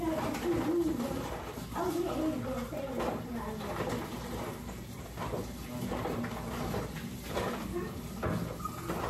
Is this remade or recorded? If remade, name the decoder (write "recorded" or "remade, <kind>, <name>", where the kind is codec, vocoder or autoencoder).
recorded